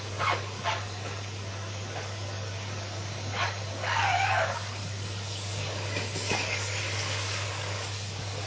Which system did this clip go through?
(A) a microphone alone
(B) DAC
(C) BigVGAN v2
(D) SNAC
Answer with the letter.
B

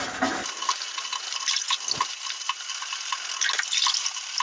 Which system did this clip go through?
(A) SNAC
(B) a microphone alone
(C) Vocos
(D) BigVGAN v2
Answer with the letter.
B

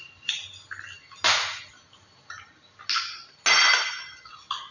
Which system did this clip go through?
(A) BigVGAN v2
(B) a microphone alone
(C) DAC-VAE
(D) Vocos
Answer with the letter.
B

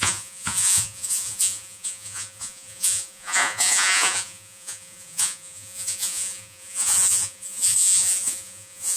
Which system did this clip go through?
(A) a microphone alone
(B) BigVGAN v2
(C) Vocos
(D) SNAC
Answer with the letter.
C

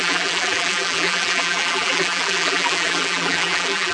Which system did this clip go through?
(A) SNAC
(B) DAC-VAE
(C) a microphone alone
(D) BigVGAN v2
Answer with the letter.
D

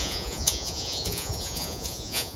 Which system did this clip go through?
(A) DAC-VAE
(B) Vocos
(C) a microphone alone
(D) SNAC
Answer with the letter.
B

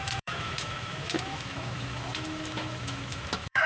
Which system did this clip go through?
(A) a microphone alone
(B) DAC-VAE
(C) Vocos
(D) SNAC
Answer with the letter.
B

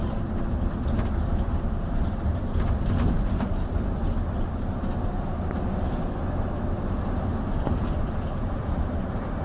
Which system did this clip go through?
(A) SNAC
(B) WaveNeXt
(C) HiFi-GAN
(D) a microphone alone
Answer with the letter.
D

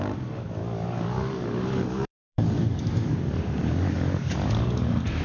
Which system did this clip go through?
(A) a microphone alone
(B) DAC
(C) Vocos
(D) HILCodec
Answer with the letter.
B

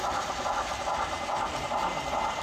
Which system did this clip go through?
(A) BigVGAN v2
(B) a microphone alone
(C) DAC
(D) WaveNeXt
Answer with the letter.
A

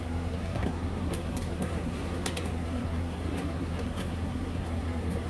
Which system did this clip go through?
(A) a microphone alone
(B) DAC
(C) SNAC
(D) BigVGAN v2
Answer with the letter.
C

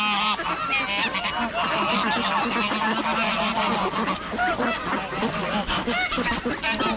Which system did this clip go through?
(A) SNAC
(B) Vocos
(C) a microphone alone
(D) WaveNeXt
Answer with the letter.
C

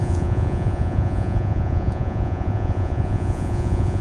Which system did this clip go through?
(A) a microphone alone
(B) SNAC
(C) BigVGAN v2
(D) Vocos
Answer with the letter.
D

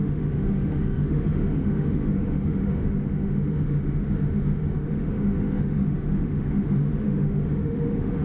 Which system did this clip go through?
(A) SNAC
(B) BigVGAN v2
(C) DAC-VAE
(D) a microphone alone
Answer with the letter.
C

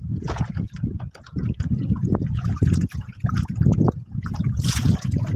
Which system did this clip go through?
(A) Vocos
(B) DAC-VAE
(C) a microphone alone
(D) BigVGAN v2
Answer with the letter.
A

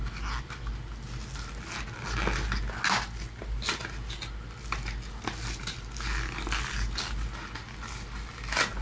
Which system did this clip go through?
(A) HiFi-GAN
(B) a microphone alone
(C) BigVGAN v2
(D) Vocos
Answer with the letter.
B